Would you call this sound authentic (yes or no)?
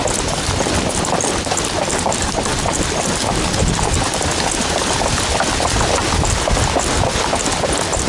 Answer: yes